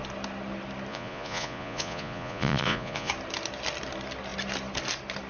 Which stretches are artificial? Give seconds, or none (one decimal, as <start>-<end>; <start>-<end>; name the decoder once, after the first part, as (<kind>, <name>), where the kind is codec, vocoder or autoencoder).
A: 0.9-3.1 (vocoder, Vocos)